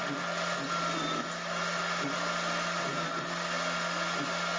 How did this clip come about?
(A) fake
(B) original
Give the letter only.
B